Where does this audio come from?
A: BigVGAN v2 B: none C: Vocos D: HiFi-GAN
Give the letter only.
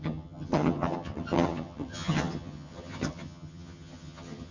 D